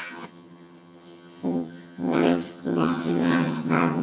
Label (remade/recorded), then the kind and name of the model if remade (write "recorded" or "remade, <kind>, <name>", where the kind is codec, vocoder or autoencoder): remade, vocoder, HiFi-GAN